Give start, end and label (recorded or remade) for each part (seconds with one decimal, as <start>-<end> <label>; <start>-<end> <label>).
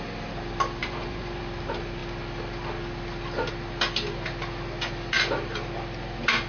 0.0-0.8 recorded; 0.8-1.4 remade; 1.4-6.5 recorded